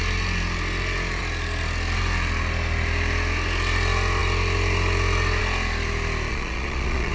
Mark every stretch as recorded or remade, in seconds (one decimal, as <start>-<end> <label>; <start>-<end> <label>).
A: 0.0-6.3 recorded; 6.3-7.1 remade